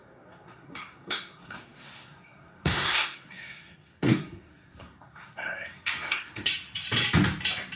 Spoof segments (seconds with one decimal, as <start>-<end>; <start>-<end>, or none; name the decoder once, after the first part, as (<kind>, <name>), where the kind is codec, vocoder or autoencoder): 0.0-6.5 (codec, SNAC)